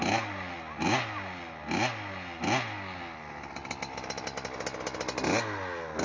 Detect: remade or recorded recorded